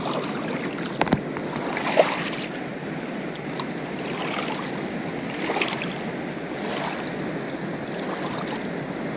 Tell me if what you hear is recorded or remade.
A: recorded